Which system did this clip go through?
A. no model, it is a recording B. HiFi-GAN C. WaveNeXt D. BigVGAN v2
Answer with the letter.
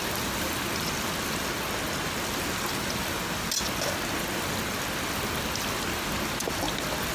A